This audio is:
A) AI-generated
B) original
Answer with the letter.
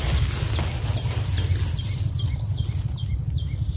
B